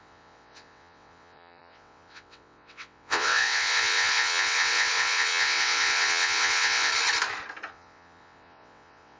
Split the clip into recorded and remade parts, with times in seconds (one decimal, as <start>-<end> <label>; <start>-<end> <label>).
0.0-6.9 remade; 6.9-7.7 recorded; 7.7-9.2 remade